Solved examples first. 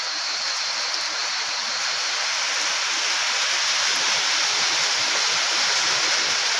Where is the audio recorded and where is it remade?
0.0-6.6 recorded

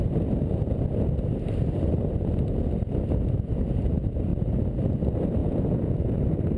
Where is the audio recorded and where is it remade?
0.0-5.4 recorded; 5.4-6.1 remade; 6.1-6.6 recorded

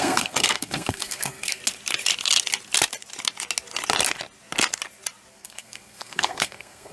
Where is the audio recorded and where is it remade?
0.0-1.6 remade; 1.6-5.3 recorded; 5.3-6.9 remade